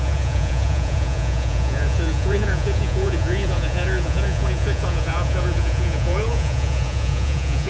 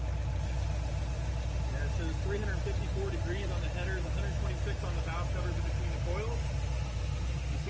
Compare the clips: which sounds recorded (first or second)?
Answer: second